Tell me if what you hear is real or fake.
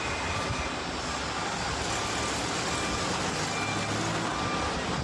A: real